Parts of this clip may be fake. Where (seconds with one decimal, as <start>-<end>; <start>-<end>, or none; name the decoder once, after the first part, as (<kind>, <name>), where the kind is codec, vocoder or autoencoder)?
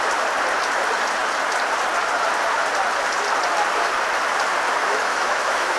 4.8-5.8 (autoencoder, DAC-VAE)